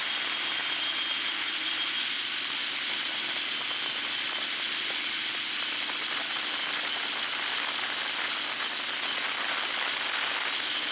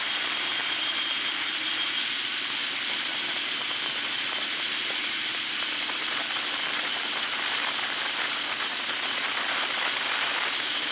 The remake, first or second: second